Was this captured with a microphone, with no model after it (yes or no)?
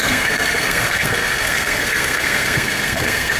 no